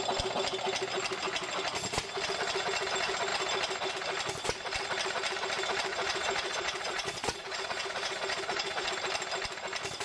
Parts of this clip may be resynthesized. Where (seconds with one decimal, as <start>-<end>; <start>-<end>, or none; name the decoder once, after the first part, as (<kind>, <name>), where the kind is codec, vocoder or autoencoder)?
5.9-8.9 (vocoder, Vocos)